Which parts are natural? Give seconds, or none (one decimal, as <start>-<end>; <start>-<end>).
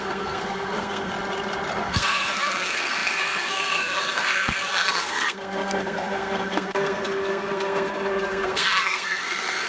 1.1-1.8